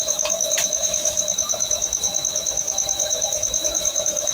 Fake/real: fake